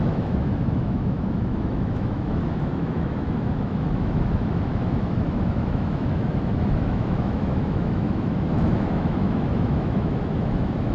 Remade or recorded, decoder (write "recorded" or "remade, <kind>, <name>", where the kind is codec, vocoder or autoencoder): remade, autoencoder, DAC-VAE